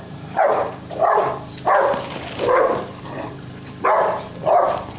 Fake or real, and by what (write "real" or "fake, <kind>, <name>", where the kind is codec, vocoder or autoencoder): fake, vocoder, BigVGAN v2